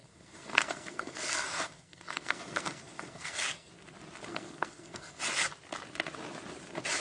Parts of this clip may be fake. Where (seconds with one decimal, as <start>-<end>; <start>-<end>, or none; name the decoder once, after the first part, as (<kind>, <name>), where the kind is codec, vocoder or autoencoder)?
0.0-3.7 (codec, SNAC); 4.3-5.2